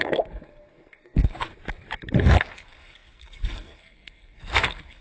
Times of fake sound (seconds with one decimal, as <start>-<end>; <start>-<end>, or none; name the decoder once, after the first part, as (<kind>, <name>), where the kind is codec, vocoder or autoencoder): 0.0-1.5 (codec, SNAC); 2.2-5.0